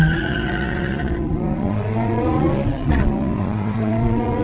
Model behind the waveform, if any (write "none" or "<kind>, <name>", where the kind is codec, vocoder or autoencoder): vocoder, Vocos